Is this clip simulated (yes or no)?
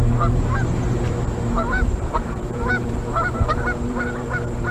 yes